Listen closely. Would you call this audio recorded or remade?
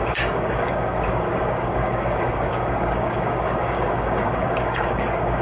remade